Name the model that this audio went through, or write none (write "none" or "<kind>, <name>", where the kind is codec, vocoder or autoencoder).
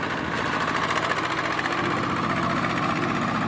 none